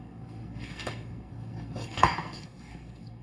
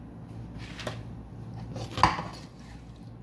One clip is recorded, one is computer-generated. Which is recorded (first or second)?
second